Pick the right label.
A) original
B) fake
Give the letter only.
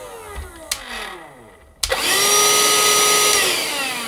A